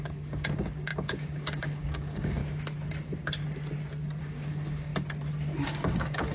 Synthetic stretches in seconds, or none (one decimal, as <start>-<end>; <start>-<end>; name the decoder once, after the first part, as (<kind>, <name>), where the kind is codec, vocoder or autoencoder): 0.0-2.4 (codec, DAC); 4.2-4.9; 5.6-6.3